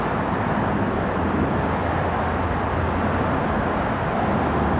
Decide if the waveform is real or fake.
real